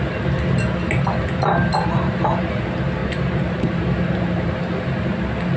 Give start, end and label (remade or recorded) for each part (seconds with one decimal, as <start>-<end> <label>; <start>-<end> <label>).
0.0-1.7 recorded; 1.7-2.6 remade; 2.6-3.0 recorded; 3.0-4.5 remade; 4.5-5.6 recorded